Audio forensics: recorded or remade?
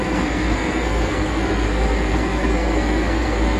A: remade